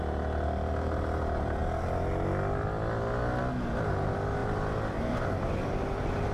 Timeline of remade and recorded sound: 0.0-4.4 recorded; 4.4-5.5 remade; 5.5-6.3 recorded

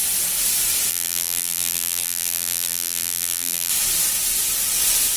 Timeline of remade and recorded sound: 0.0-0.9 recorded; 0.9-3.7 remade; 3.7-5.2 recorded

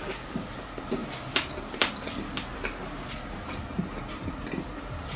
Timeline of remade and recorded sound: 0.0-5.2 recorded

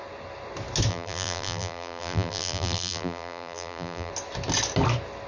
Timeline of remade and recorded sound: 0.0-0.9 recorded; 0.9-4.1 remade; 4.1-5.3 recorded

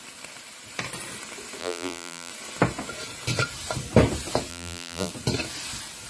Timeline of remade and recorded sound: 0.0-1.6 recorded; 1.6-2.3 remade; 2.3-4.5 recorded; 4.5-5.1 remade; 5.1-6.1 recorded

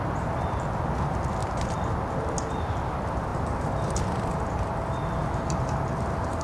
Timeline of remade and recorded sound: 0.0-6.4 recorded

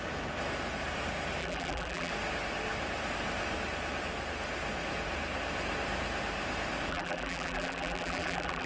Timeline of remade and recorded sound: 0.0-1.4 recorded; 1.4-2.1 remade; 2.1-6.9 recorded; 6.9-8.7 remade

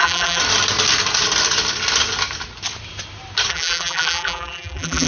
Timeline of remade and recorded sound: 0.0-0.4 remade; 0.4-3.5 recorded; 3.5-5.1 remade